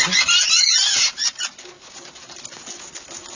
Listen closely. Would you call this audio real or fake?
real